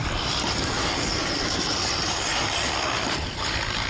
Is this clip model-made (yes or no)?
yes